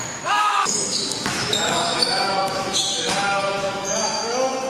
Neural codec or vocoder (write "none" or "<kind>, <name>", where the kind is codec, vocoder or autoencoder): autoencoder, DAC-VAE